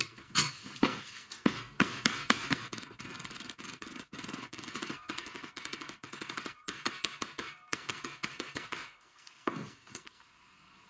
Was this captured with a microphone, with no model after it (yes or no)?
no